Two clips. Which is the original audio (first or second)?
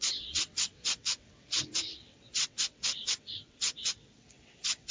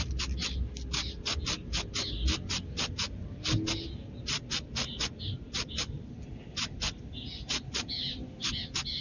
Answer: second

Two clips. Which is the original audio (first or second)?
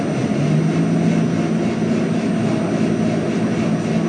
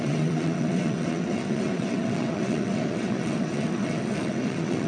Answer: first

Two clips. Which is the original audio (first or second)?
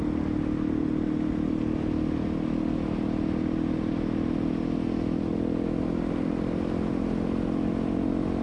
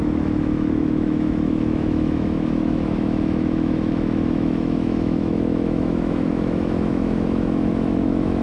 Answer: first